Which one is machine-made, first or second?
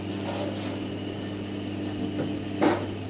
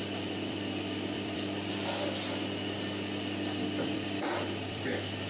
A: second